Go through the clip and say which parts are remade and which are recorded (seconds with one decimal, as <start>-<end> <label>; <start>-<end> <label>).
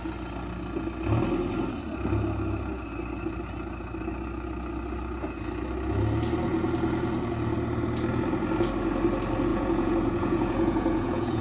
0.0-9.5 recorded; 9.5-11.4 remade